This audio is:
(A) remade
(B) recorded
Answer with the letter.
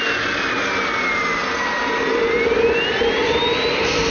B